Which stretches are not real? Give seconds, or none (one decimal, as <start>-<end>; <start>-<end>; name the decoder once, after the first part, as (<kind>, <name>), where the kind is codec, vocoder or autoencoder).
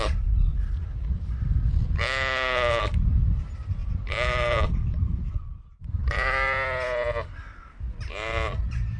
0.5-1.2 (vocoder, BigVGAN v2); 3.8-5.6